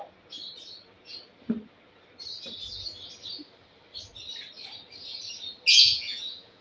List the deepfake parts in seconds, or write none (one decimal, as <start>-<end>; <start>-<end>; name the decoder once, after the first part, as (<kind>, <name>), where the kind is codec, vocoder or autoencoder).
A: 5.7-6.6 (vocoder, Vocos)